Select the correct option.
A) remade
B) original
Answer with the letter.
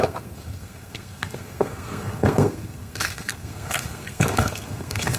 A